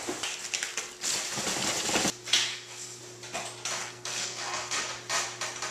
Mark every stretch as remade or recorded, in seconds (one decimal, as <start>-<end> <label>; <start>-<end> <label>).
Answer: 0.0-2.5 recorded; 2.5-3.0 remade; 3.0-3.8 recorded; 3.8-4.8 remade; 4.8-5.7 recorded

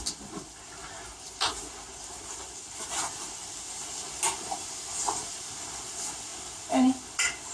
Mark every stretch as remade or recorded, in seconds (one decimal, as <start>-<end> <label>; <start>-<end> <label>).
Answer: 0.0-7.5 recorded

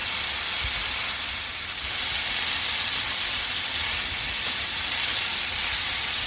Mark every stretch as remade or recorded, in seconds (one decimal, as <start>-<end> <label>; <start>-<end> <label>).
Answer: 0.0-6.3 recorded

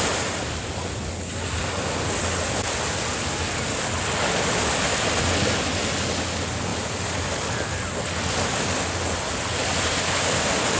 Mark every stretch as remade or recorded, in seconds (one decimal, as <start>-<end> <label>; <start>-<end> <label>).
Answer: 0.0-10.8 recorded

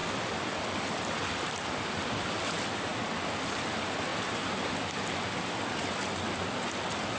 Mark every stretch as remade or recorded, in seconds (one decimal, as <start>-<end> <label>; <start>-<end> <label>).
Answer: 0.0-7.2 recorded

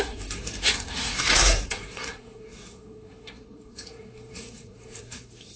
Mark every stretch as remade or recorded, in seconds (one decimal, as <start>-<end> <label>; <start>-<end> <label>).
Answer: 0.0-5.6 remade